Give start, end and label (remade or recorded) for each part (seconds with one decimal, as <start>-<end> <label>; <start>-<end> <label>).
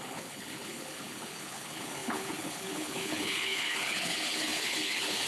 0.0-5.3 remade